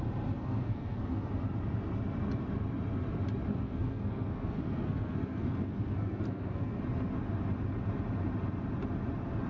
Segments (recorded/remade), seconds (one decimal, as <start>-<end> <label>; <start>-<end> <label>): 0.0-0.4 recorded; 0.4-1.3 remade; 1.3-3.5 recorded; 3.5-6.8 remade; 6.8-9.5 recorded